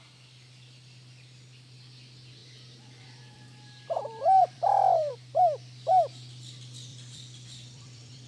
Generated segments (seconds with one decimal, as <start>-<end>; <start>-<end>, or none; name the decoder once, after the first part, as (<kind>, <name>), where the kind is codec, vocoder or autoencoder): 2.4-5.1 (vocoder, BigVGAN v2); 6.9-8.3